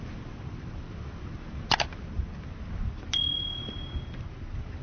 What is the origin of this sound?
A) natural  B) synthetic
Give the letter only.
A